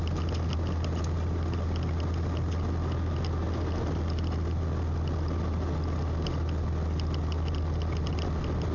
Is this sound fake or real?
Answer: real